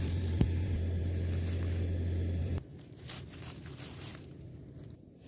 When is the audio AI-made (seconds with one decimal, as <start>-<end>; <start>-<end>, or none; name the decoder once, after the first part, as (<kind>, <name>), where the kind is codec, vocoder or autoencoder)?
0.0-1.0 (vocoder, BigVGAN v2); 2.4-5.3